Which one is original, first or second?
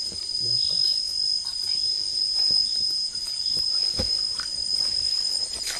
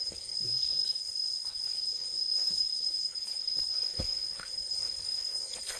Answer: first